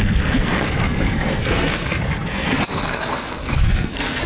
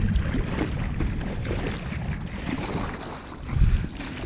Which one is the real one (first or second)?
second